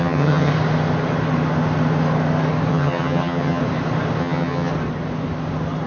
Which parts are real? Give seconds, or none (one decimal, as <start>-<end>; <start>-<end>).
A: 0.5-2.7; 3.6-4.2; 4.7-5.9